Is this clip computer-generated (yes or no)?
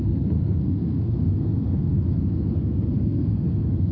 yes